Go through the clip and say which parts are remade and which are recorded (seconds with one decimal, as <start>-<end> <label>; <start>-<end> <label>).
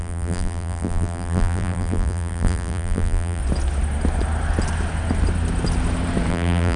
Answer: 0.0-3.4 remade; 3.4-6.3 recorded; 6.3-6.8 remade